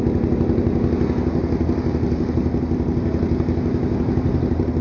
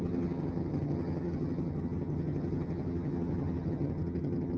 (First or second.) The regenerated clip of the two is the second